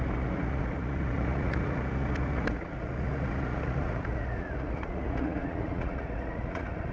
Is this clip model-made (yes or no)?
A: yes